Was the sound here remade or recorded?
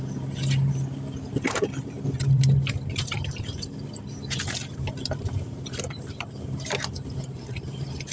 remade